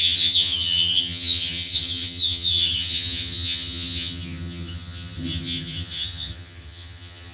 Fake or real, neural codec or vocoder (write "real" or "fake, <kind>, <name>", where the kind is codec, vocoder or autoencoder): fake, vocoder, HiFi-GAN